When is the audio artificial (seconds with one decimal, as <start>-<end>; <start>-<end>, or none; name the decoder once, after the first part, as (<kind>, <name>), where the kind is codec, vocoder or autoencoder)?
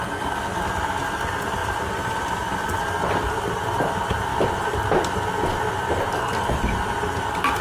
1.6-2.8 (vocoder, BigVGAN v2)